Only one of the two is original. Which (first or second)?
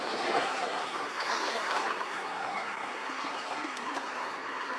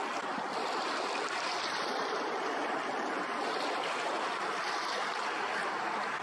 second